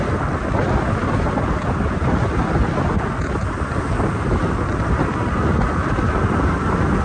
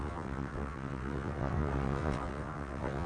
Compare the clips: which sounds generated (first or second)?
second